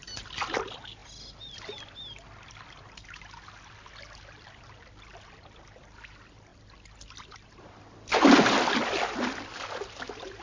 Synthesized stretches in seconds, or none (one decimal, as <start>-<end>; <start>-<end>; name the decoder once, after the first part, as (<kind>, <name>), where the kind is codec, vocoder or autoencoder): none